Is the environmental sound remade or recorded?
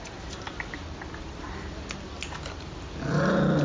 recorded